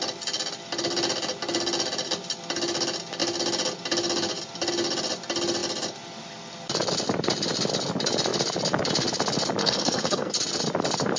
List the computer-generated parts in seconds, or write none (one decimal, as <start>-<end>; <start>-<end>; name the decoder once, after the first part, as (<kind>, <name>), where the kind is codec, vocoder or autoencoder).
9.6-10.3 (codec, SNAC)